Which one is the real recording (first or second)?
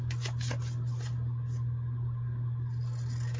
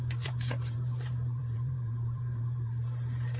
first